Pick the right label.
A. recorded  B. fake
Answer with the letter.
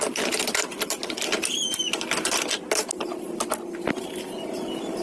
A